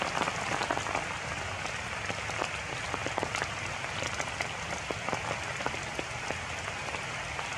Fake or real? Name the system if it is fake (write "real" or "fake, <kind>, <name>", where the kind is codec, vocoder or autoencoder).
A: real